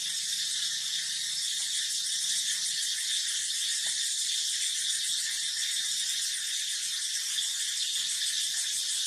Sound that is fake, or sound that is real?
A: real